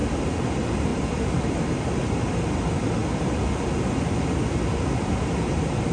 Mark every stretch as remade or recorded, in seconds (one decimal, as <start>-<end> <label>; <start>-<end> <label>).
0.0-5.9 recorded